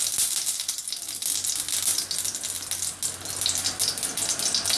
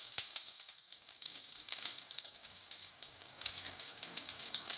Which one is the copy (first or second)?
second